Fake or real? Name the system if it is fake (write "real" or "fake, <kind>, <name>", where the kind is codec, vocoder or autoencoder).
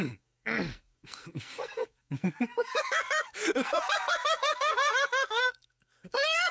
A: fake, codec, SNAC